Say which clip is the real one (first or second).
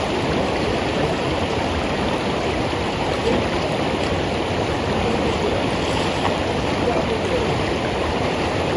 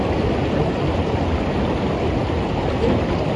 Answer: second